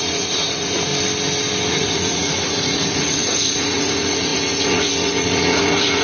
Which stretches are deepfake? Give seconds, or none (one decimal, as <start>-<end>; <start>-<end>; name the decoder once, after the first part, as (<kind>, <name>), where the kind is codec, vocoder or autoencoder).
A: 0.0-0.9 (vocoder, Vocos); 1.7-6.0